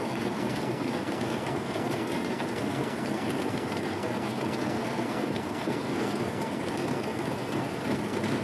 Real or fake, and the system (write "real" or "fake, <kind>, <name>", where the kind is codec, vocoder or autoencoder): fake, codec, SNAC